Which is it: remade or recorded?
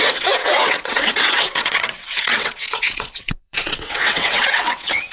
remade